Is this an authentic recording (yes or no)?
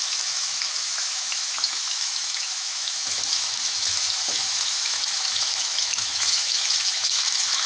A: no